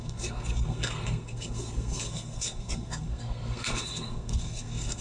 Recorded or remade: remade